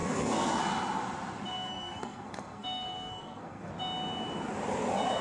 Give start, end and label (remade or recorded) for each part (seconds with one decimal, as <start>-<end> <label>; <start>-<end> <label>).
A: 0.0-0.6 remade; 0.6-1.5 recorded; 1.5-3.7 remade; 3.7-5.2 recorded